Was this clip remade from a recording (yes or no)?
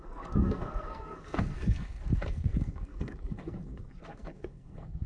yes